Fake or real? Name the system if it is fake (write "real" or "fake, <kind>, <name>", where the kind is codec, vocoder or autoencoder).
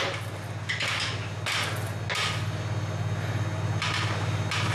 real